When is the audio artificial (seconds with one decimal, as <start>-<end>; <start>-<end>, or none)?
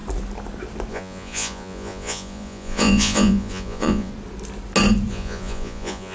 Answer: 0.9-4.1; 5.1-6.1